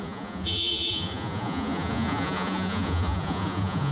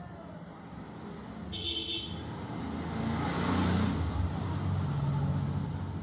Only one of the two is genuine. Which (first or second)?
second